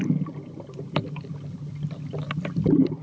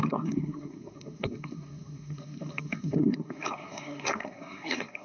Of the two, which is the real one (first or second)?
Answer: first